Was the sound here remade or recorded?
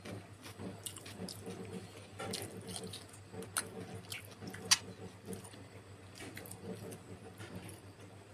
recorded